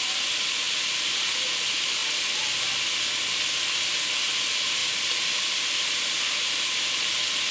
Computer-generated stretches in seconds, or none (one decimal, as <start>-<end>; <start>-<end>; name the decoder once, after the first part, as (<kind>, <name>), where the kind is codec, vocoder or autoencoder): 2.0-2.6 (vocoder, BigVGAN v2); 4.8-6.3